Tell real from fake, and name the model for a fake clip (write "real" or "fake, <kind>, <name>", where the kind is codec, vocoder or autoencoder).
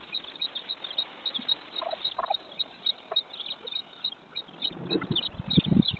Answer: real